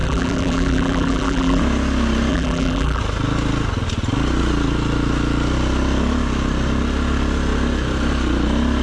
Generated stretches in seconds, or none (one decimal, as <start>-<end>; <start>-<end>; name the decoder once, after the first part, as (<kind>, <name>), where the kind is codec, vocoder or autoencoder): 0.0-1.6 (vocoder, BigVGAN v2); 2.3-3.0